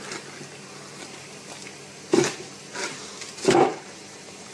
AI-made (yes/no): yes